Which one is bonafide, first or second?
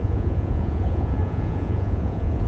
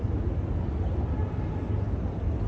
second